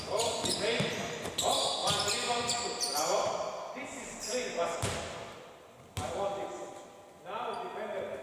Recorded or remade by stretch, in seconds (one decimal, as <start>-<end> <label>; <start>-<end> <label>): 0.0-8.2 recorded